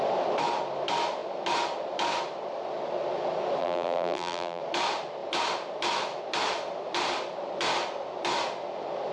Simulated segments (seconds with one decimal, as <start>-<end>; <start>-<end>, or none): 3.6-4.6